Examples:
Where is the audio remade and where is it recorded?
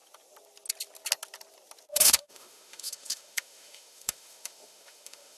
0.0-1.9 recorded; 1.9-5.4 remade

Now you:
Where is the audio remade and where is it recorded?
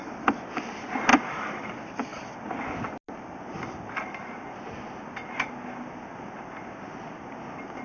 0.0-1.1 recorded; 1.1-1.7 remade; 1.7-7.8 recorded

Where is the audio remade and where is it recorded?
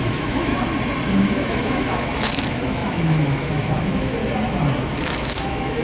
0.0-0.5 remade; 0.5-1.1 recorded; 1.1-4.2 remade; 4.2-5.0 recorded; 5.0-5.8 remade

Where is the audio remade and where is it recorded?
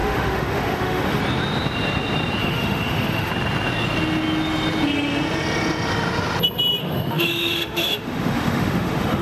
0.0-1.2 remade; 1.2-2.4 recorded; 2.4-3.3 remade; 3.3-6.8 recorded; 6.8-9.2 remade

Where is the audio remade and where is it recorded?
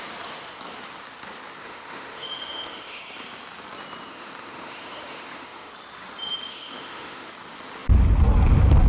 0.0-1.6 recorded; 1.6-3.0 remade; 3.0-4.1 recorded; 4.1-5.7 remade; 5.7-6.5 recorded; 6.5-7.3 remade; 7.3-8.9 recorded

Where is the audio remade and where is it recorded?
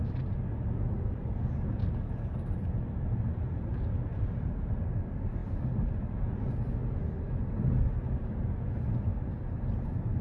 0.0-10.2 recorded